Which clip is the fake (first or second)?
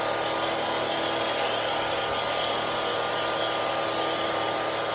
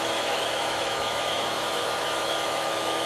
second